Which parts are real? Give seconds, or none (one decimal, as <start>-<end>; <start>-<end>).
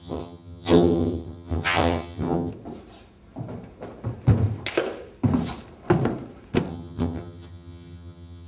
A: 2.5-6.7